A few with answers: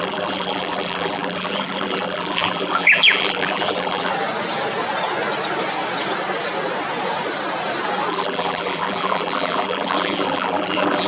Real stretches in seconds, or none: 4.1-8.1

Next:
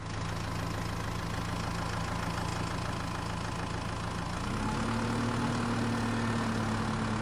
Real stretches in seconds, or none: 0.0-7.2

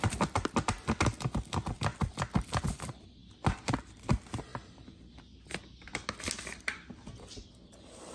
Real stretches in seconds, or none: 0.0-1.9; 2.6-3.2; 4.0-4.5; 5.2-8.1

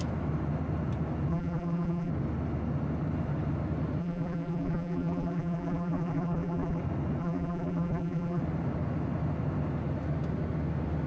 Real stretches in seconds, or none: 0.0-1.3; 2.1-4.0; 6.8-7.2; 8.4-11.1

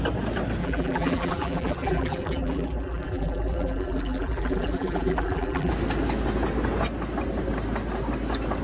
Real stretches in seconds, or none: 0.0-0.6; 5.7-8.6

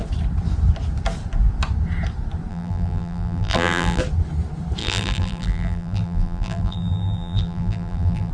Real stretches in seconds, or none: 0.0-2.5; 4.0-4.8

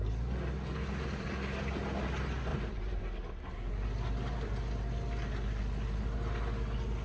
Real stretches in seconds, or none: 0.0-2.5; 3.0-7.0